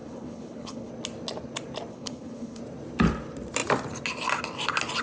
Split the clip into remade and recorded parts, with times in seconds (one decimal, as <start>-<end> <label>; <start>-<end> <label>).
0.0-0.9 remade; 0.9-1.9 recorded; 1.9-2.6 remade; 2.6-5.0 recorded